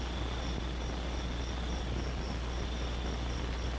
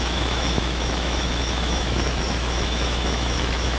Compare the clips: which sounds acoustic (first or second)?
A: first